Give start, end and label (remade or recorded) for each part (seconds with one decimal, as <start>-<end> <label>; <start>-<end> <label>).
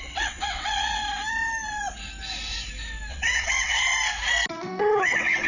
0.0-1.0 remade; 1.0-3.1 recorded; 3.1-3.9 remade; 3.9-4.5 recorded; 4.5-5.5 remade